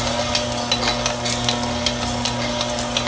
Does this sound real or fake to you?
real